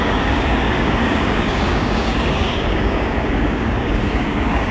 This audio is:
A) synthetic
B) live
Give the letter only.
A